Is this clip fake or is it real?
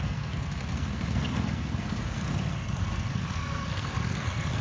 fake